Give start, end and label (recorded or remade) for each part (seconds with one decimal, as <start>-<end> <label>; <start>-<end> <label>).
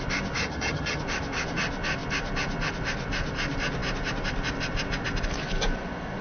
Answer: 0.0-0.4 recorded; 0.4-1.0 remade; 1.0-6.2 recorded